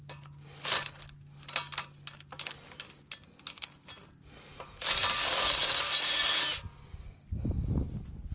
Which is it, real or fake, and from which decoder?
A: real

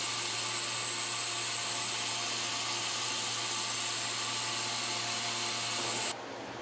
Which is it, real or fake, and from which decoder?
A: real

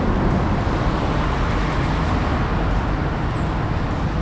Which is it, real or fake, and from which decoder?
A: real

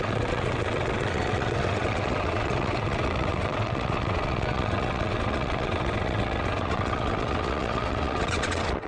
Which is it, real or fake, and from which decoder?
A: fake, vocoder, WaveNeXt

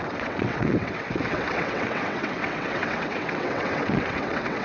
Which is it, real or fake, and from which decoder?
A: fake, vocoder, WaveNeXt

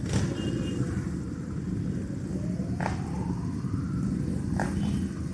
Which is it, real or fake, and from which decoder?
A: real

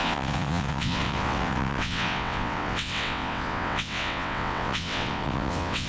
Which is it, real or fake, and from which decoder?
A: fake, vocoder, WaveNeXt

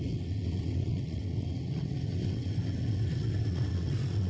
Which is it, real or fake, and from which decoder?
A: fake, vocoder, WaveNeXt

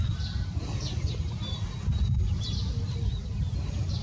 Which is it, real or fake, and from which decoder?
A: real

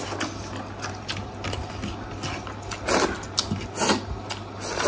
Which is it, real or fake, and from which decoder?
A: real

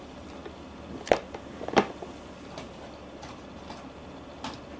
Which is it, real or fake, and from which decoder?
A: real